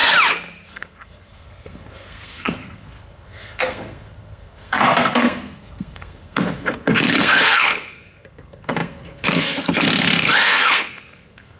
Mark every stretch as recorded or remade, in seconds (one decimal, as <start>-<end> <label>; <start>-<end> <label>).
0.0-0.7 recorded; 0.7-11.6 remade